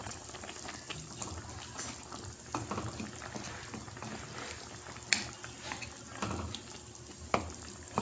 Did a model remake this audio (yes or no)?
no